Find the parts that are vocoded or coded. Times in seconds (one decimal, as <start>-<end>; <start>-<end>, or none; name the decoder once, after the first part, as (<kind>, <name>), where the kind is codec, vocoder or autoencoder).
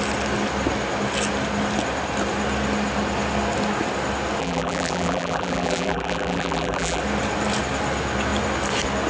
4.4-7.0 (vocoder, BigVGAN v2)